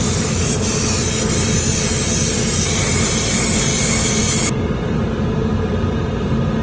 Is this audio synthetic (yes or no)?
no